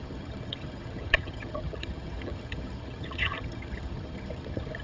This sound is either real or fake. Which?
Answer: fake